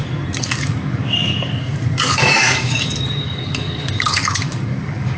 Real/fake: fake